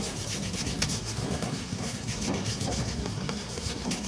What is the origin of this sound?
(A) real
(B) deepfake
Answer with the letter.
B